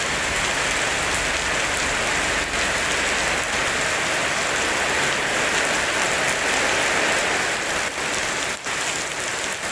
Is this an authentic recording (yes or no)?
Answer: yes